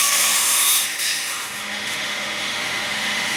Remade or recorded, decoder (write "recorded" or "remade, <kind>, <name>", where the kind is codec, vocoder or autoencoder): remade, autoencoder, DAC-VAE